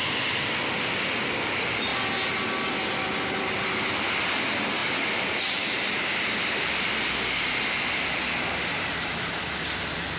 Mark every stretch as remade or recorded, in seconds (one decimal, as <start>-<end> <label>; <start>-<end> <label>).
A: 0.0-10.2 recorded